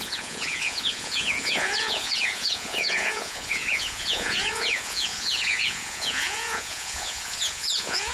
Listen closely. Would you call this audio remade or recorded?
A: remade